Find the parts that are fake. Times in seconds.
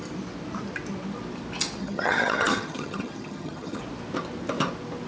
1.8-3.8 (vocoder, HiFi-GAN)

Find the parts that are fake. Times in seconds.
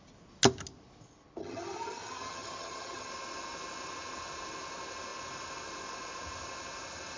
1.4-3.1 (vocoder, HiFi-GAN)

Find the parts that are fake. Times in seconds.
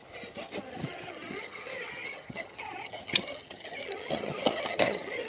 0.7-5.3 (vocoder, HiFi-GAN)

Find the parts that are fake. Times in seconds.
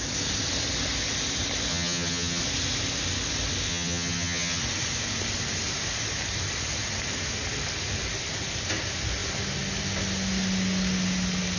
1.7-2.4 (vocoder, HiFi-GAN); 3.7-4.6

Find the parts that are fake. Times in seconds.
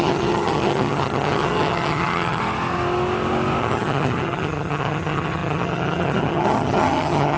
0.0-2.4 (vocoder, HiFi-GAN); 3.6-7.4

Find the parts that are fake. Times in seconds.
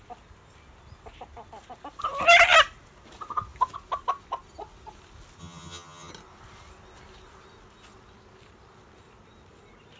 5.4-6.1 (vocoder, HiFi-GAN)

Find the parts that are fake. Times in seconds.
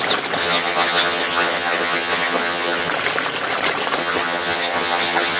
0.4-2.9 (vocoder, HiFi-GAN); 4.0-5.4